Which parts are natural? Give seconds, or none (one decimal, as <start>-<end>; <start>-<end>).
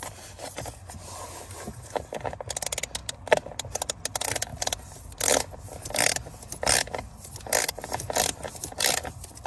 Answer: 0.0-9.5